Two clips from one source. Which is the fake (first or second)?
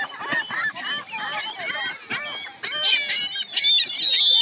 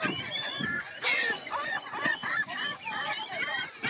second